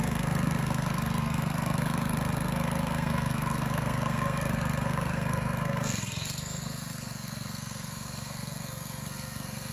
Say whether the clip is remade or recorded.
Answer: remade